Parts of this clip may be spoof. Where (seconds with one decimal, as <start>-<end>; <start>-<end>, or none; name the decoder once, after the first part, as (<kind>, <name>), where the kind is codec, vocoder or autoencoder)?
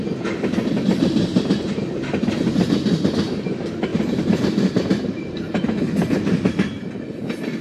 1.3-1.8 (vocoder, BigVGAN v2); 3.9-6.8